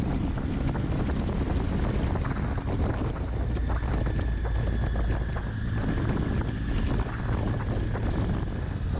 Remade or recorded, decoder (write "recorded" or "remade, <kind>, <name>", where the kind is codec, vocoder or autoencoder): recorded